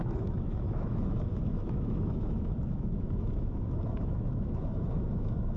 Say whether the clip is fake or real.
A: fake